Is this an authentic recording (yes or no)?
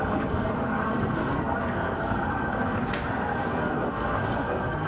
no